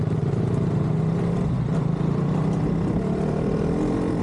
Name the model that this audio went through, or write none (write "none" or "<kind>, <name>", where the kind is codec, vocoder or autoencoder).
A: none